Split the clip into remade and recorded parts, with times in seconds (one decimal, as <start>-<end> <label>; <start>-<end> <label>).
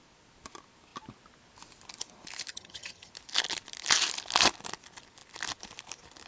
0.0-2.5 recorded; 2.5-3.1 remade; 3.1-6.3 recorded